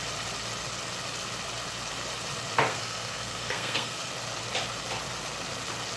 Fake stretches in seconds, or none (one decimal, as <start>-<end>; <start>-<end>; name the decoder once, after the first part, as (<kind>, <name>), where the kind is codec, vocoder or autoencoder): 2.7-4.1 (codec, SNAC)